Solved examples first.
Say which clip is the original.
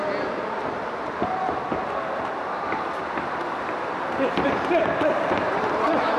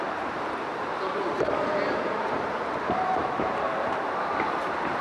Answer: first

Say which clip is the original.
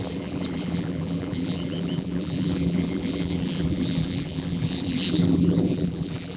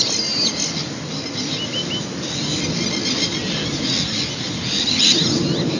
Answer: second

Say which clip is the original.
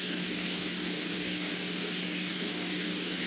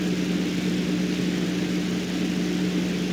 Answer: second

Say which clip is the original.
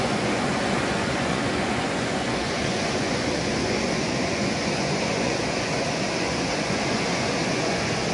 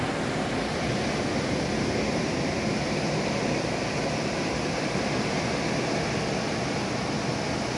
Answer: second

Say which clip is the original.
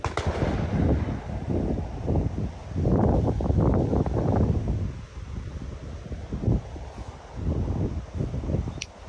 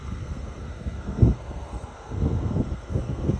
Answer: first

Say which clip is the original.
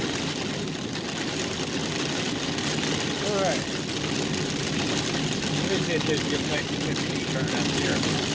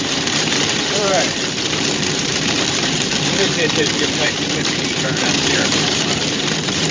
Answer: first